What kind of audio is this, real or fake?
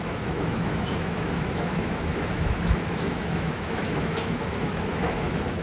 fake